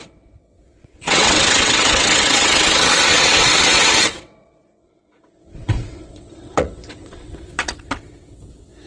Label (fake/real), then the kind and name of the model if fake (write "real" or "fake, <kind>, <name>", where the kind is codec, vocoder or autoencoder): fake, vocoder, WaveNeXt